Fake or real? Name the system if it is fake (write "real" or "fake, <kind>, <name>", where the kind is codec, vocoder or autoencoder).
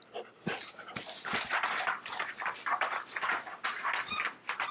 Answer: real